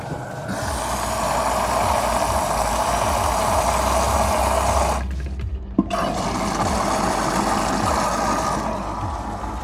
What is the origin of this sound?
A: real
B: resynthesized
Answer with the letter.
A